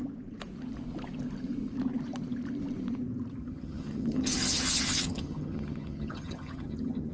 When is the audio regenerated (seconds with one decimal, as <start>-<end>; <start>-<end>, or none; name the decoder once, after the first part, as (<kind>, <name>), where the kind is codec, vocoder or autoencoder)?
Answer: 3.4-7.1 (vocoder, HiFi-GAN)